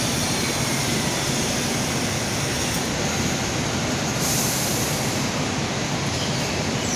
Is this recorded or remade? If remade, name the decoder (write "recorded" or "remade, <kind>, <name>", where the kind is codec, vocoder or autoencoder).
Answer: recorded